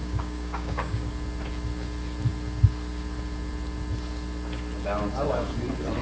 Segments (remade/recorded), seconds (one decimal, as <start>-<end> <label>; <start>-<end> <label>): 0.0-1.1 remade; 1.1-6.0 recorded